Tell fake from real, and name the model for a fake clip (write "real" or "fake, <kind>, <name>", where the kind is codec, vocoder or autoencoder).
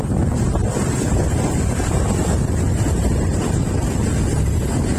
real